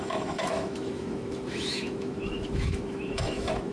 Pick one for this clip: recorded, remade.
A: remade